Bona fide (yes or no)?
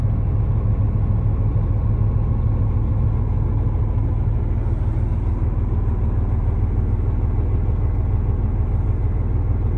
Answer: yes